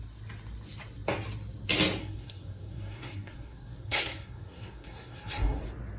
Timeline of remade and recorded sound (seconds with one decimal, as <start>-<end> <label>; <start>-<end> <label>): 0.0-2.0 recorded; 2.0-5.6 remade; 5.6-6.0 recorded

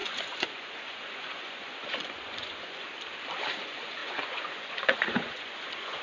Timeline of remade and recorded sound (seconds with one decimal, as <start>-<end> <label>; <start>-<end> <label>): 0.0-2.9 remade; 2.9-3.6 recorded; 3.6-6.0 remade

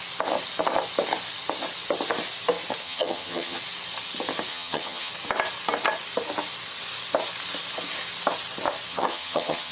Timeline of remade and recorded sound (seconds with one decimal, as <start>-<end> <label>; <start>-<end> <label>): 0.0-2.8 recorded; 2.8-3.6 remade; 3.6-4.5 recorded; 4.5-5.1 remade; 5.1-8.9 recorded; 8.9-9.7 remade